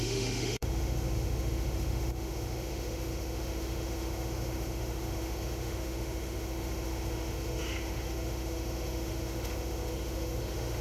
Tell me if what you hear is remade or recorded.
remade